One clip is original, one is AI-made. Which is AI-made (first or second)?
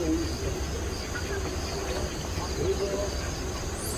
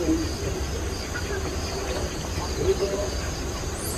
second